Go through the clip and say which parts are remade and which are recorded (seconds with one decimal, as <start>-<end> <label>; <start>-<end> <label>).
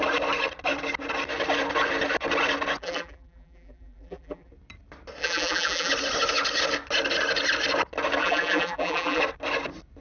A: 0.0-2.8 recorded; 2.8-4.5 remade; 4.5-5.2 recorded; 5.2-5.9 remade; 5.9-8.2 recorded; 8.2-9.2 remade; 9.2-10.0 recorded